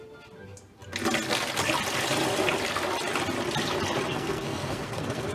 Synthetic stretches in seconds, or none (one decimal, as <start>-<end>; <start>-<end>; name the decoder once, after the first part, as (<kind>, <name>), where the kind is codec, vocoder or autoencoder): 4.1-5.3 (codec, SNAC)